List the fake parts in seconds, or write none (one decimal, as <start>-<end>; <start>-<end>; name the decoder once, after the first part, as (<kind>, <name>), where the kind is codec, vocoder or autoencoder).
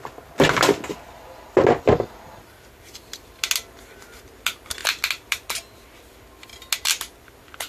none